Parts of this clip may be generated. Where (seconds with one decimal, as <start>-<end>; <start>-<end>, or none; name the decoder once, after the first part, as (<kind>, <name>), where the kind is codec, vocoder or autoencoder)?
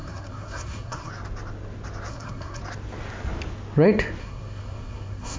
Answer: 0.0-1.1 (codec, SNAC); 2.1-2.6; 4.2-5.4